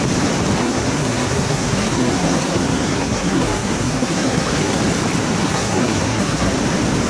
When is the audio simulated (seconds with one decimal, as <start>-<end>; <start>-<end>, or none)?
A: 0.6-4.8; 5.4-6.5